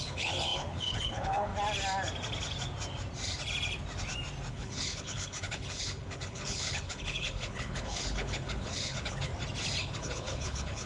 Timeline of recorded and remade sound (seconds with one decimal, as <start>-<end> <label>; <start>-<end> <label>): 0.0-1.5 remade; 1.5-4.5 recorded; 4.5-9.3 remade; 9.3-9.8 recorded; 9.8-10.9 remade